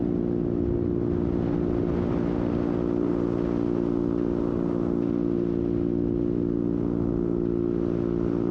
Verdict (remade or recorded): recorded